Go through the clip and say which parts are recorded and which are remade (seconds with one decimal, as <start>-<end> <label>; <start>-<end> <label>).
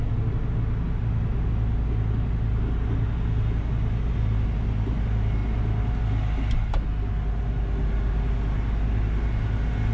0.0-9.9 recorded